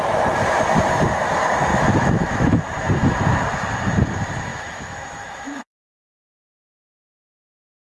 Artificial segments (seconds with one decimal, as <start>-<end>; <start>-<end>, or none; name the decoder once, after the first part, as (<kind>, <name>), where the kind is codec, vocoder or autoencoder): 1.7-2.5 (autoencoder, DAC-VAE); 4.5-5.9